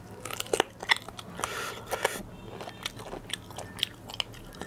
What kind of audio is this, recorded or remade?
recorded